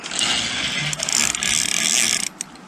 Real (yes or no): yes